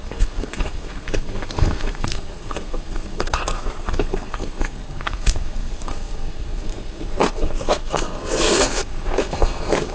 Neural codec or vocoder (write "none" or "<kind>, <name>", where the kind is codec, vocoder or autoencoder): codec, SNAC